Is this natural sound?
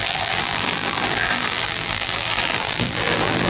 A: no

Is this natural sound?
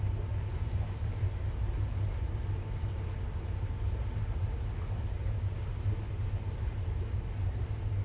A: yes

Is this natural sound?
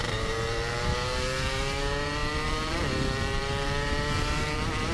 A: no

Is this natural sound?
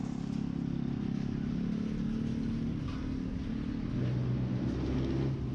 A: yes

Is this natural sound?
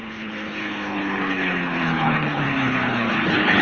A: no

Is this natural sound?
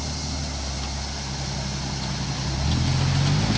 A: yes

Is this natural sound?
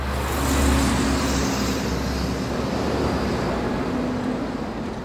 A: yes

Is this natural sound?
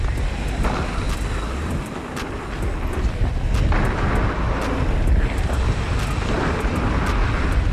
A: yes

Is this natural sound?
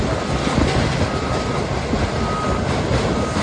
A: yes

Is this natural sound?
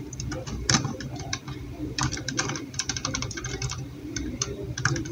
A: no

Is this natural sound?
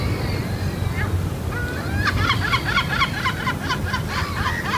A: yes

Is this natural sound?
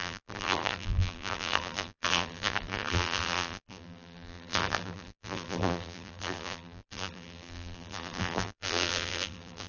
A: no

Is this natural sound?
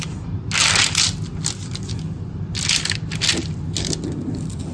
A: yes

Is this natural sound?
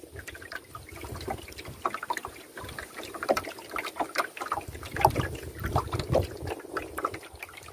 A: yes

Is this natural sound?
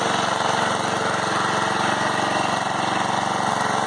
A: yes